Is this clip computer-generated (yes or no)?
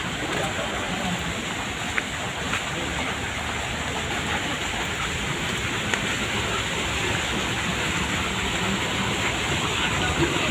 no